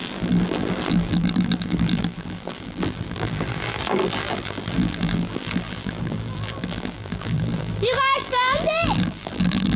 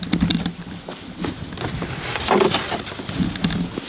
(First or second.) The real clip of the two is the second